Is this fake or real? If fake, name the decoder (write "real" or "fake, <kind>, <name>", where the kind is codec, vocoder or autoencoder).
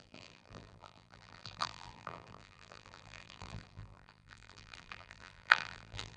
fake, vocoder, BigVGAN v2